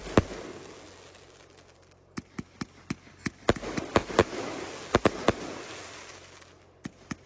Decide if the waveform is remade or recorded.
recorded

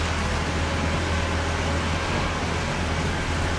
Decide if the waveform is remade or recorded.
recorded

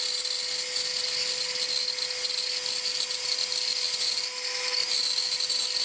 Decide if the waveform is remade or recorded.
recorded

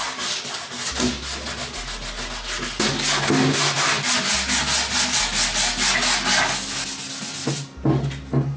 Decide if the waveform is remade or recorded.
recorded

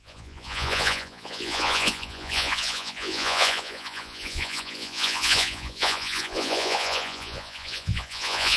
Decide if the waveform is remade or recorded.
remade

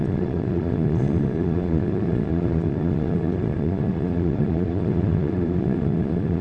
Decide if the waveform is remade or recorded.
remade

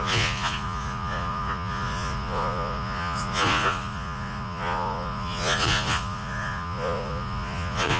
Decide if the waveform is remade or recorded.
remade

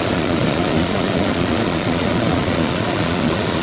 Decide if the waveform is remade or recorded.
remade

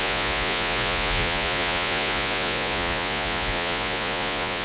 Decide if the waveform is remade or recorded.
remade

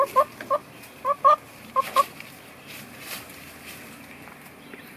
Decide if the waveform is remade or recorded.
recorded